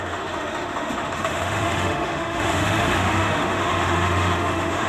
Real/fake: fake